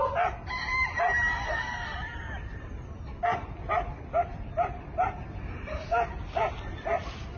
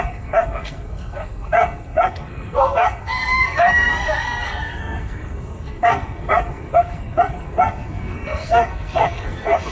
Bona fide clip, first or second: first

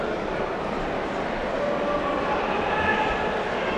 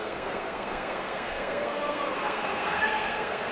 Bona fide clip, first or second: first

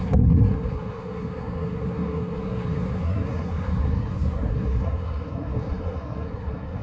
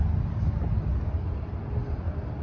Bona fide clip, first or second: second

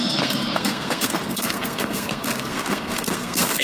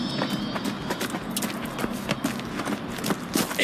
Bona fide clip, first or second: second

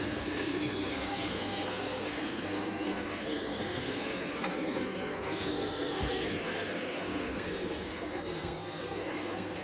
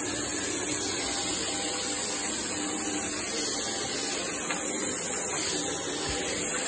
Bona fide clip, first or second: second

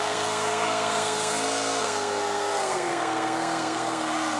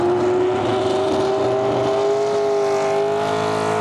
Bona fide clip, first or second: second